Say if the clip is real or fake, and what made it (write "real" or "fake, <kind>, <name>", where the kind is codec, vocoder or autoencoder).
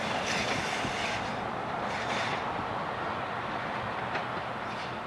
real